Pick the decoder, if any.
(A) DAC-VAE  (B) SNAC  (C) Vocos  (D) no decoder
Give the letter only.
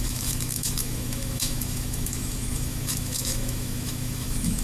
A